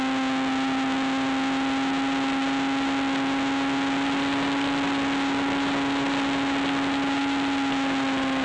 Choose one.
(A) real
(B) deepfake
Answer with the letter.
A